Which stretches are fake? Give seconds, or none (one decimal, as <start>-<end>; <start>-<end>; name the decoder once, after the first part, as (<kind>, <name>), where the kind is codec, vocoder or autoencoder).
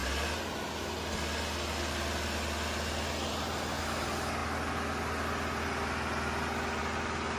none